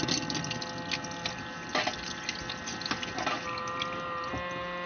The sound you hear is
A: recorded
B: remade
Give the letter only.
A